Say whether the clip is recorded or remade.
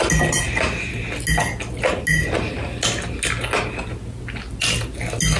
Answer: recorded